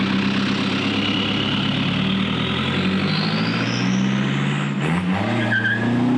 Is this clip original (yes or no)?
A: yes